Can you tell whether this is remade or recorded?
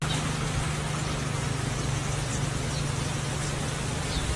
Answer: recorded